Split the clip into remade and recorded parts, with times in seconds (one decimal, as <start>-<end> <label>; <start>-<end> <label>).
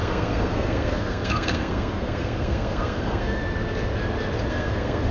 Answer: 0.0-3.4 remade; 3.4-4.5 recorded; 4.5-5.1 remade